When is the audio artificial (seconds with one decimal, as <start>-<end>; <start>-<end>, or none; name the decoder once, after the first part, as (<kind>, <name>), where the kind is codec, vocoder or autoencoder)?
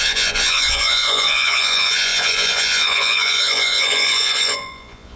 0.0-5.2 (vocoder, Vocos)